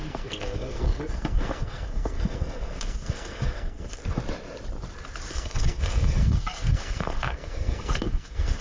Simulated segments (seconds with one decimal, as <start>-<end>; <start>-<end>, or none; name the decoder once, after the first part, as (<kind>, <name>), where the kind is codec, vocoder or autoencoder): 0.0-4.0 (codec, SNAC); 5.3-8.6

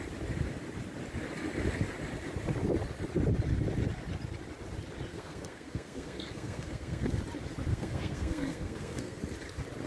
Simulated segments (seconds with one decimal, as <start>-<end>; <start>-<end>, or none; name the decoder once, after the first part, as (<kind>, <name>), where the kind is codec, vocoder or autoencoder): 5.1-7.2 (codec, SNAC); 7.7-9.2

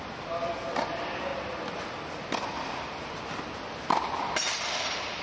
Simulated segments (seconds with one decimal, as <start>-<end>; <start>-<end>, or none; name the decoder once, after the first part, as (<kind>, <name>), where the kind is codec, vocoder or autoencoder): none

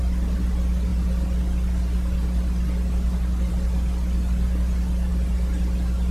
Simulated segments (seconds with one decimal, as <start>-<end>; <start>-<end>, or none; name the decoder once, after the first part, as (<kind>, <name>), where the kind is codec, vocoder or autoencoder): none